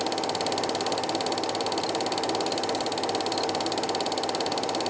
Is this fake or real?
real